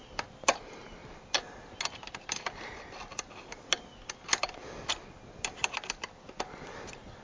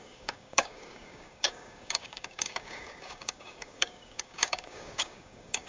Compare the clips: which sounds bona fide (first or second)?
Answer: first